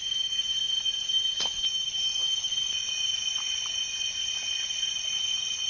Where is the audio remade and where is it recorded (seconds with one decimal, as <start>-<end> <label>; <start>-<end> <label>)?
0.0-5.7 recorded